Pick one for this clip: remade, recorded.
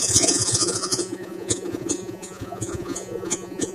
remade